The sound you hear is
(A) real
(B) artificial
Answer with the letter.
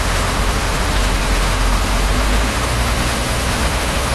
B